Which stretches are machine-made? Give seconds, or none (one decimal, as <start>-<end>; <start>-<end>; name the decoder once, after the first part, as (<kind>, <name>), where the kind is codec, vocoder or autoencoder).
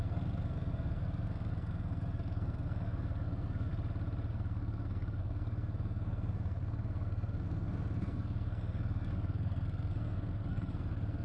0.0-3.7 (codec, SNAC); 4.3-11.2